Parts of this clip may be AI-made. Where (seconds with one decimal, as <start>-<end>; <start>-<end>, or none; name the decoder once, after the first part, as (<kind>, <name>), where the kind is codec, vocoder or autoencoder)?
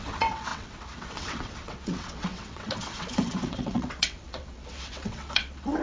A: 0.0-5.8 (vocoder, WaveNeXt)